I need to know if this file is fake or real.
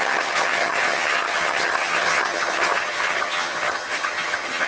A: fake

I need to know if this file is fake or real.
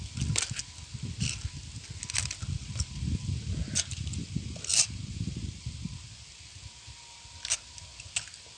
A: real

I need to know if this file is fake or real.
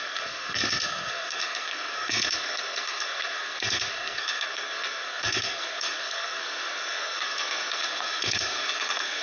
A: fake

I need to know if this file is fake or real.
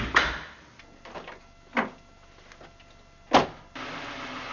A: real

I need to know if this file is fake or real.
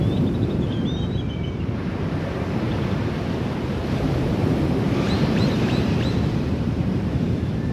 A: fake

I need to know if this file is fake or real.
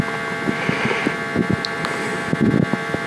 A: fake